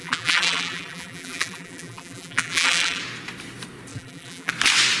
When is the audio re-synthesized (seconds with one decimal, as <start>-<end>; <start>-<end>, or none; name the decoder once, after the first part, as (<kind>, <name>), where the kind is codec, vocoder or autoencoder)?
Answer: 0.0-3.0 (vocoder, BigVGAN v2); 3.9-4.5